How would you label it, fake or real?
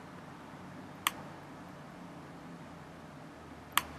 real